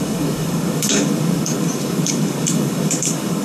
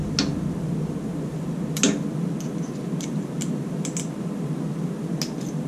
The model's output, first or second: first